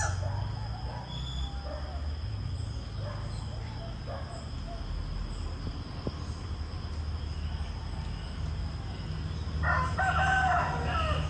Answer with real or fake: real